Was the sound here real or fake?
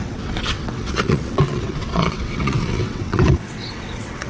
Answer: fake